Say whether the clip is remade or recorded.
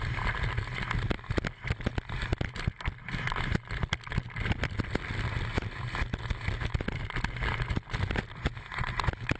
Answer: recorded